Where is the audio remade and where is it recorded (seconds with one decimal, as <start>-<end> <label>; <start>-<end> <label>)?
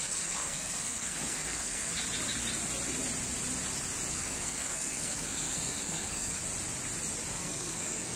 0.0-1.9 remade; 1.9-4.1 recorded; 4.1-6.4 remade; 6.4-7.3 recorded; 7.3-8.2 remade